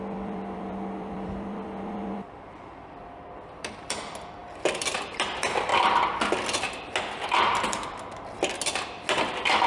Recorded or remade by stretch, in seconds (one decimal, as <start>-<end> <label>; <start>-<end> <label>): 0.0-5.7 remade; 5.7-9.2 recorded; 9.2-9.7 remade